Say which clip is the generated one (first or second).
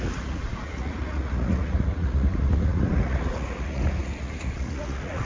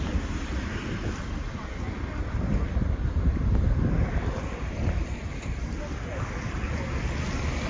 first